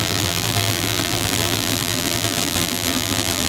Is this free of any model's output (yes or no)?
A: no